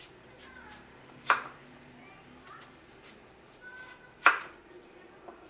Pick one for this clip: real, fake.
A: fake